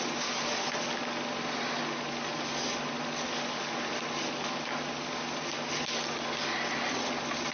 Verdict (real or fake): real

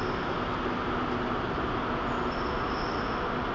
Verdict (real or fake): real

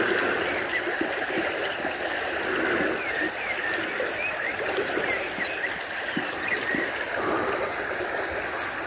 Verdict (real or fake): real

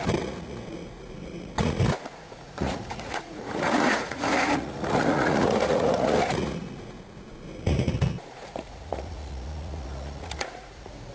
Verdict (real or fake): fake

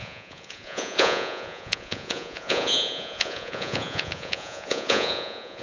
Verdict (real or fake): fake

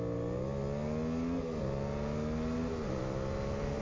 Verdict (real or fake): real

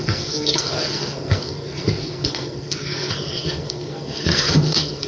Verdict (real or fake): fake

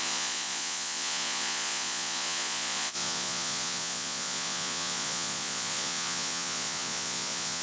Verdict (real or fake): fake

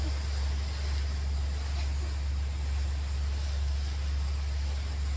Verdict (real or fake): real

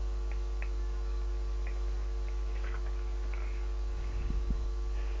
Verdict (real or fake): fake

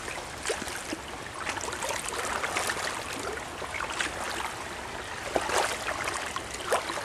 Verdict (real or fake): real